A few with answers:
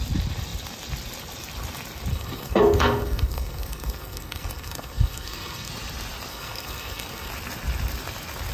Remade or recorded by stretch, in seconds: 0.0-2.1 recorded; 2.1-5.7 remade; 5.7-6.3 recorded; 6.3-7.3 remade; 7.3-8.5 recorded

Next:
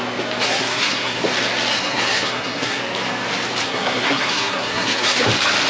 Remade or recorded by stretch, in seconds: 0.0-0.4 recorded; 0.4-1.2 remade; 1.2-1.7 recorded; 1.7-2.8 remade; 2.8-3.6 recorded; 3.6-5.2 remade; 5.2-5.7 recorded

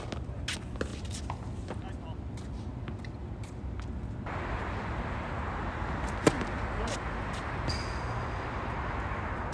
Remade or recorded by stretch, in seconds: 0.0-9.5 recorded

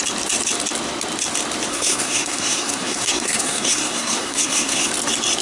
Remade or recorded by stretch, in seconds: 0.0-1.7 recorded; 1.7-4.9 remade; 4.9-5.4 recorded

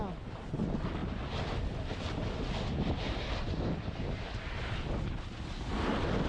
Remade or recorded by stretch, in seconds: 0.0-6.3 recorded